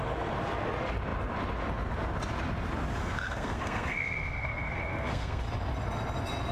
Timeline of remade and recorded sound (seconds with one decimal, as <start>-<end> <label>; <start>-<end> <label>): 0.0-3.0 recorded; 3.0-5.4 remade; 5.4-6.5 recorded